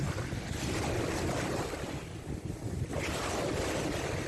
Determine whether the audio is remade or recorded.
recorded